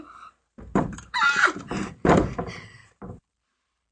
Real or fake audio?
fake